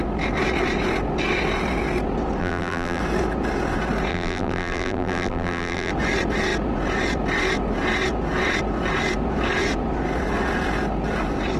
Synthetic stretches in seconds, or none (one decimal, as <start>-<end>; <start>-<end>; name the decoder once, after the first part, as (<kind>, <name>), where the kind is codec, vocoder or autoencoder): 2.4-3.0 (vocoder, BigVGAN v2); 4.1-5.9

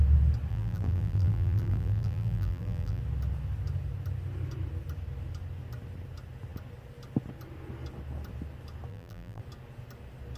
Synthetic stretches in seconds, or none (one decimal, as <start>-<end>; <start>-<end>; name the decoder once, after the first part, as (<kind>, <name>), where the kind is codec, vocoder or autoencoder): 0.5-3.0 (vocoder, BigVGAN v2); 8.9-9.4